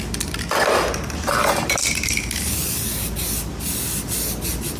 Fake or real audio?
real